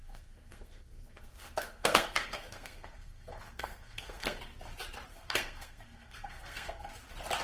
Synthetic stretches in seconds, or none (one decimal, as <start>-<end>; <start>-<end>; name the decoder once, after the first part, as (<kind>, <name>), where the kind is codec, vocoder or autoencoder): 0.0-4.4 (codec, SNAC); 5.1-6.9

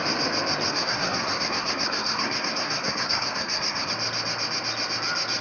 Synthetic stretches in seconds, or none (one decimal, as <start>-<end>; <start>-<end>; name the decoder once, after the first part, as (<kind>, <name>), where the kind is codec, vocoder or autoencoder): 0.7-3.9 (codec, SNAC)